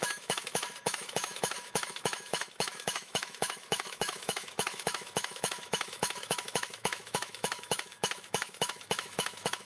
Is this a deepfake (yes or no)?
yes